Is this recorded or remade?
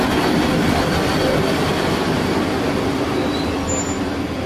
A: recorded